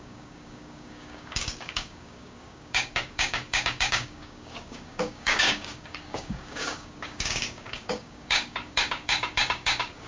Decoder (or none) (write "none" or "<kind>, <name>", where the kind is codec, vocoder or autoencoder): codec, DAC